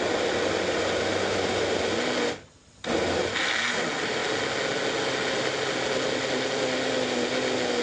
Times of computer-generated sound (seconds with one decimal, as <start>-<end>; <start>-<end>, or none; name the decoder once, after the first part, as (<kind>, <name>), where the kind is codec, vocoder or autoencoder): none